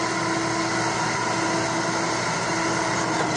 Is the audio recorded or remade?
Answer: recorded